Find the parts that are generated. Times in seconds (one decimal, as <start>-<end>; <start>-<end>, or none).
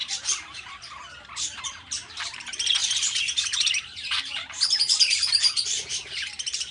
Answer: 0.0-6.7